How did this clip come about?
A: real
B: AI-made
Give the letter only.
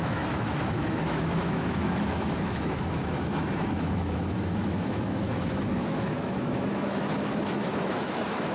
B